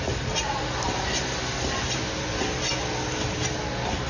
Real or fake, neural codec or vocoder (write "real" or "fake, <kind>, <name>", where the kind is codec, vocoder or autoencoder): real